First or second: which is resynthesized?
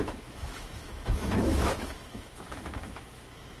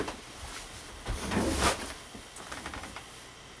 first